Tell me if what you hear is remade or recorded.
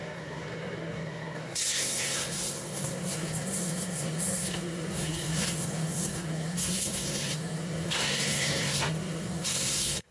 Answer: remade